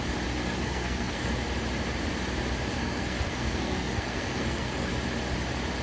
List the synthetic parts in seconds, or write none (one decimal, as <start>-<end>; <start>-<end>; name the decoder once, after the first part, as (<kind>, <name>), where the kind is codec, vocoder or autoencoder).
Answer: 0.4-1.3 (codec, SNAC); 2.7-4.9